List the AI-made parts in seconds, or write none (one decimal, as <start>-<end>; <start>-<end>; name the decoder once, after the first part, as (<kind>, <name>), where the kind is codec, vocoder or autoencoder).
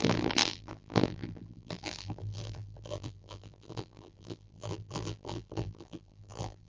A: 0.0-6.7 (vocoder, BigVGAN v2)